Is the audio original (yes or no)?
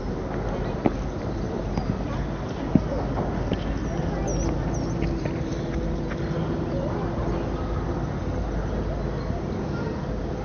yes